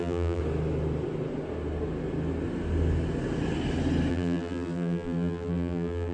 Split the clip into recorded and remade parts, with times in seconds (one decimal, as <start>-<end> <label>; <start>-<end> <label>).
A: 0.0-0.4 remade; 0.4-4.1 recorded; 4.1-6.1 remade